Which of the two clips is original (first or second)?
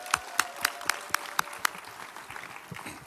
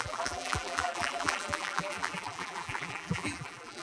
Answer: first